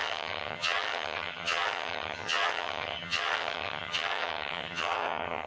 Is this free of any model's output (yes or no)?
no